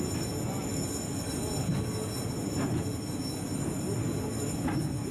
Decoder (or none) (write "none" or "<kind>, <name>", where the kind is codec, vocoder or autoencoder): none